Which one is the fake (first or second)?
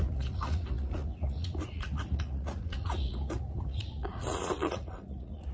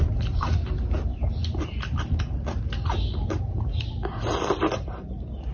first